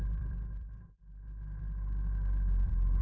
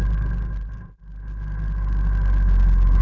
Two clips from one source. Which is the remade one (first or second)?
first